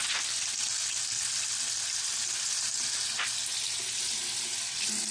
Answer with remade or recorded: recorded